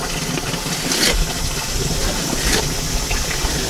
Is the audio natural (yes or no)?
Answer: yes